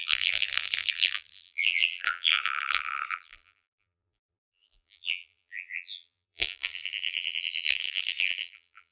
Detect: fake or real fake